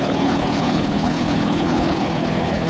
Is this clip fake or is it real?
fake